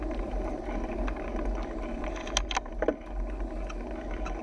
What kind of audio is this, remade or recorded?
recorded